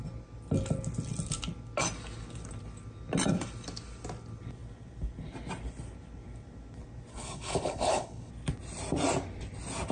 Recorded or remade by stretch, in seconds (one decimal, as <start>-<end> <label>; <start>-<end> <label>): 0.0-7.1 recorded; 7.1-8.3 remade; 8.3-9.9 recorded